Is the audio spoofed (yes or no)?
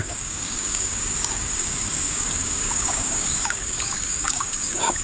yes